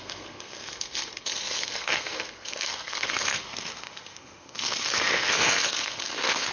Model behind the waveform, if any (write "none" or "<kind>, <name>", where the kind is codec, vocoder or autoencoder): codec, SNAC